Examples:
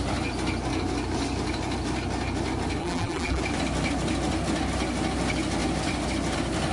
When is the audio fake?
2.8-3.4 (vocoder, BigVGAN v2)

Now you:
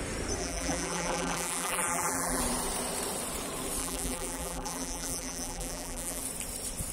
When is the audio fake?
0.4-2.4 (vocoder, BigVGAN v2); 3.8-6.2

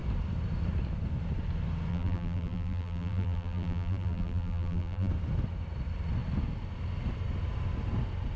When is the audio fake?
1.9-5.1 (vocoder, BigVGAN v2)

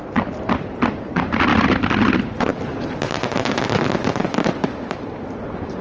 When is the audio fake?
0.0-1.5 (vocoder, BigVGAN v2); 2.0-5.8